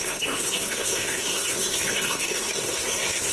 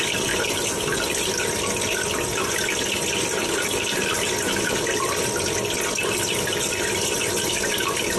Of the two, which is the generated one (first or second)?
first